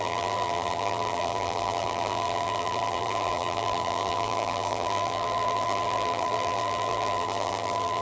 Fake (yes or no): yes